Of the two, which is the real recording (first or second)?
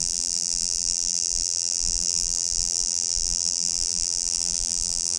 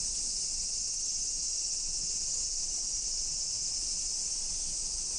second